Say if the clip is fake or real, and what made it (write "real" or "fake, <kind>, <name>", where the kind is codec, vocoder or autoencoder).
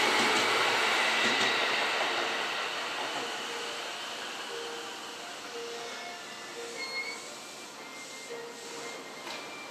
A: real